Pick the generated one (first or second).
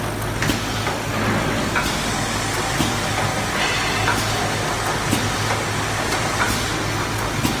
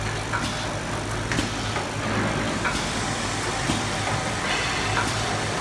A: second